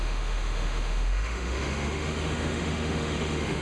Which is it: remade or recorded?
remade